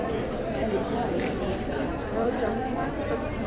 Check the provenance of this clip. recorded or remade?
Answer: remade